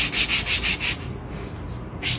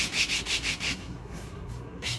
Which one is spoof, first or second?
second